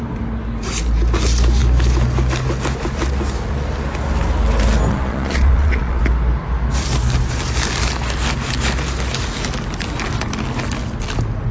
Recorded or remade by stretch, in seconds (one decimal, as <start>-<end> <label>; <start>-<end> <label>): 0.0-4.9 recorded; 4.9-6.0 remade; 6.0-11.5 recorded